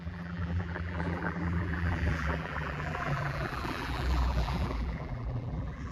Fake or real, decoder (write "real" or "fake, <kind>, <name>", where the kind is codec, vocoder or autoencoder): fake, vocoder, BigVGAN v2